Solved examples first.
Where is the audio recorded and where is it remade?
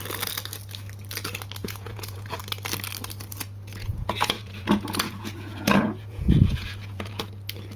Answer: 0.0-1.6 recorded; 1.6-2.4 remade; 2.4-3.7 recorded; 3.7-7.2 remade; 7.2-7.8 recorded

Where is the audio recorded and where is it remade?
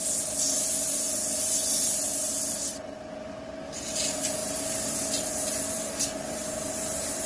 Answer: 0.0-7.3 recorded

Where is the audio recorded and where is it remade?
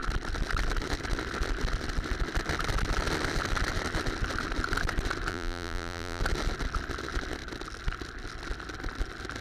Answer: 0.0-5.3 recorded; 5.3-6.2 remade; 6.2-9.4 recorded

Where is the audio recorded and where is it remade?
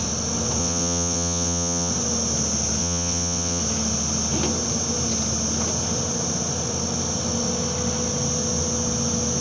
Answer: 0.0-0.6 recorded; 0.6-1.9 remade; 1.9-2.8 recorded; 2.8-3.6 remade; 3.6-9.4 recorded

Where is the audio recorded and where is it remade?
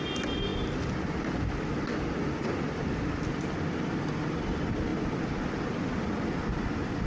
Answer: 0.0-7.1 recorded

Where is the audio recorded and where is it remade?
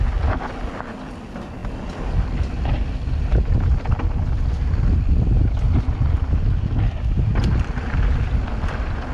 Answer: 0.0-9.1 recorded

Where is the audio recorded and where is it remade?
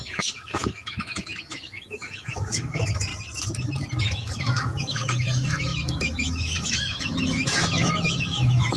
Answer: 0.0-3.1 remade; 3.1-4.0 recorded; 4.0-8.8 remade